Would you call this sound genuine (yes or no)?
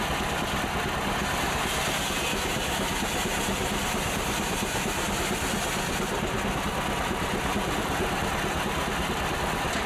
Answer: yes